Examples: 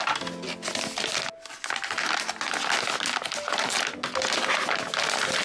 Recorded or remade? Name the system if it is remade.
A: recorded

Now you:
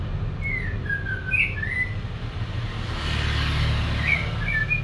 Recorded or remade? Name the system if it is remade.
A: recorded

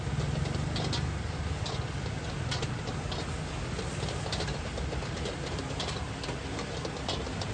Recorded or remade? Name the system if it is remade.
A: recorded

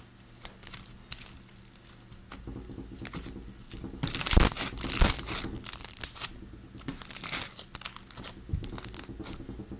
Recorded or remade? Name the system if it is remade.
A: recorded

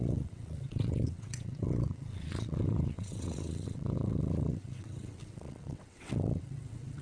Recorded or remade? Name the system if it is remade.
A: remade, vocoder, WaveNeXt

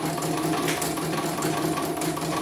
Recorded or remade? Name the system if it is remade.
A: recorded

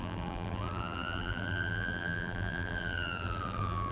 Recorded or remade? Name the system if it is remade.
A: remade, vocoder, BigVGAN v2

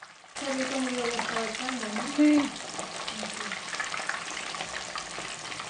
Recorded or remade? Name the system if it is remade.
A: recorded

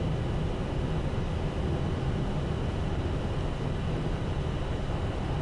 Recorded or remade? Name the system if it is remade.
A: recorded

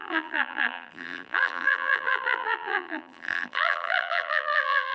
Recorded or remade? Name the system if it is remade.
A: remade, vocoder, BigVGAN v2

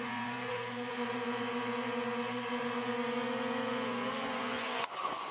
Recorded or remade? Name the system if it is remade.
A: remade, vocoder, Vocos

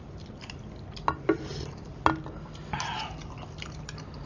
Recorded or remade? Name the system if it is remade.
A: recorded